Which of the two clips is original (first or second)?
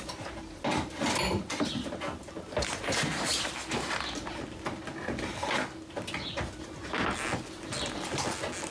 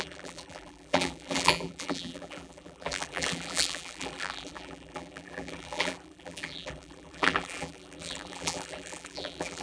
first